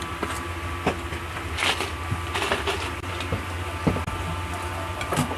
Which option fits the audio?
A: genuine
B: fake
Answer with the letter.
A